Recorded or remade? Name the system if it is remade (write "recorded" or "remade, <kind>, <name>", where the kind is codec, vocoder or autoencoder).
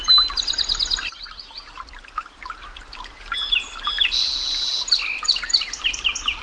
recorded